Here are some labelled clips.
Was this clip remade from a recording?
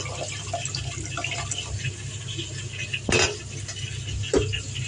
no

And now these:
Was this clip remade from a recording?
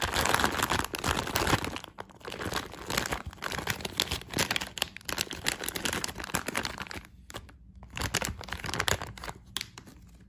no